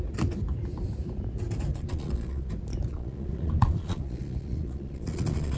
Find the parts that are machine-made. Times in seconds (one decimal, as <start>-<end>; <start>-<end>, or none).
1.7-2.5; 2.9-5.6